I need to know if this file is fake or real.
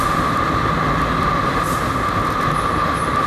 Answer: real